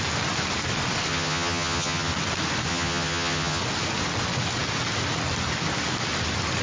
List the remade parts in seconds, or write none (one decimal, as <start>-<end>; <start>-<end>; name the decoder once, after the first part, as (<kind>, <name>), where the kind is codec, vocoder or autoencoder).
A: 1.1-2.1 (vocoder, HiFi-GAN); 2.7-3.6